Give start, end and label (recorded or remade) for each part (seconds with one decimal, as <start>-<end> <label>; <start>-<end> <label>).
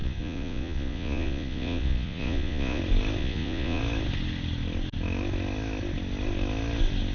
0.0-2.8 remade; 2.8-3.2 recorded; 3.2-3.8 remade; 3.8-7.1 recorded